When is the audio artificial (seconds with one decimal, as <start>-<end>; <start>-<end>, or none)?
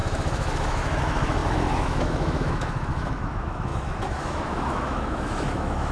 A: 0.0-5.9